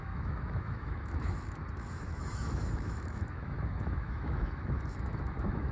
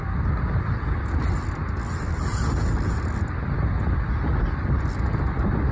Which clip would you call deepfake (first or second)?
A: first